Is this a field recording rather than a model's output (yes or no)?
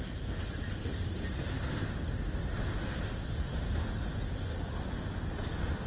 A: yes